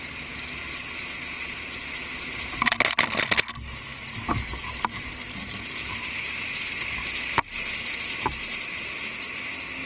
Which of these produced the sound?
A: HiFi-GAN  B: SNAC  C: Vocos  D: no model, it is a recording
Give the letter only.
D